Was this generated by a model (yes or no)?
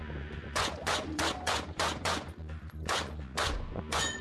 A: yes